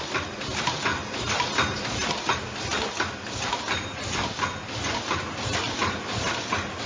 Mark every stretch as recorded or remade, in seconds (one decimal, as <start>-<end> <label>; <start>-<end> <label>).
0.0-6.9 recorded